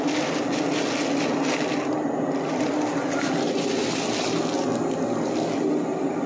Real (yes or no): yes